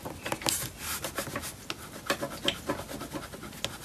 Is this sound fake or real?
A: real